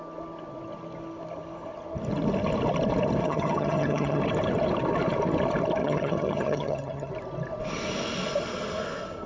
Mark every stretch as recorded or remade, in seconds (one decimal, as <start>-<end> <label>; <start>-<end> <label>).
0.0-3.2 recorded; 3.2-4.2 remade; 4.2-5.8 recorded; 5.8-7.1 remade; 7.1-9.3 recorded